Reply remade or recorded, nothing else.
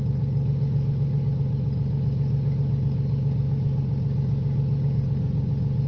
recorded